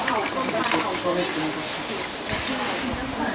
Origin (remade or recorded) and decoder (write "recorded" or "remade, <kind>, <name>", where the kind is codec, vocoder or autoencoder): recorded